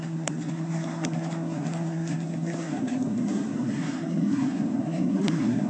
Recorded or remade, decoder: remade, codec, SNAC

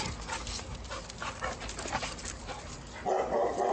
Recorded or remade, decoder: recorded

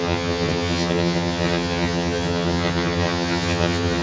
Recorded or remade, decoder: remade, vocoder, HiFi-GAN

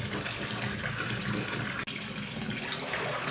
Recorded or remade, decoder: recorded